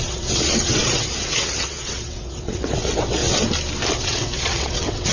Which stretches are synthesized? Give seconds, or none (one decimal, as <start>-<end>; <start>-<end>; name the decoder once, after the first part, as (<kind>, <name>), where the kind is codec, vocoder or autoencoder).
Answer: 0.0-3.2 (vocoder, WaveNeXt); 3.9-5.1